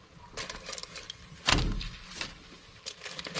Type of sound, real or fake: real